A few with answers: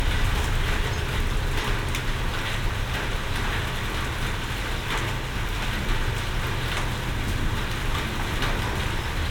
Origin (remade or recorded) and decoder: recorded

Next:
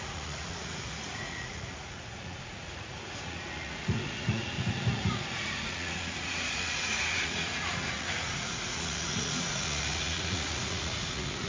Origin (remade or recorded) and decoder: remade, vocoder, Vocos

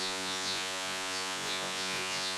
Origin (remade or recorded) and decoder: remade, vocoder, Vocos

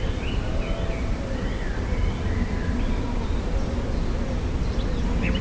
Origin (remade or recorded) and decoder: recorded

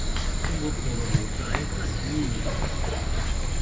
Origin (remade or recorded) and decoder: recorded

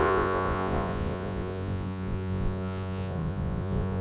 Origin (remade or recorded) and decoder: remade, vocoder, Vocos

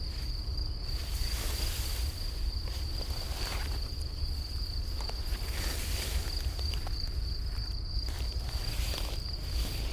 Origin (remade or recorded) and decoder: recorded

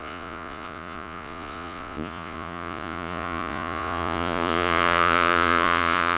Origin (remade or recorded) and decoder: remade, vocoder, Vocos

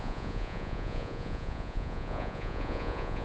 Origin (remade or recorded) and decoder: remade, vocoder, Vocos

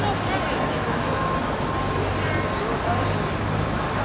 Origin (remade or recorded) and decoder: recorded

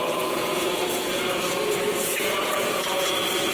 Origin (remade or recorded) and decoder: remade, vocoder, Vocos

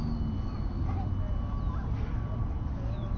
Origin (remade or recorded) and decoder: recorded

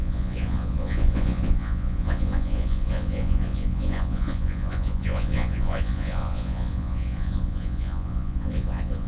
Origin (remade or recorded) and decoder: remade, vocoder, Vocos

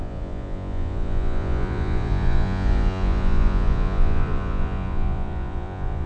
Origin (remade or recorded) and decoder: remade, vocoder, Vocos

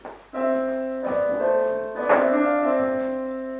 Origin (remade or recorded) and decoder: recorded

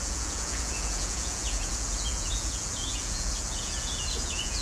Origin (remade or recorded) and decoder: remade, vocoder, Vocos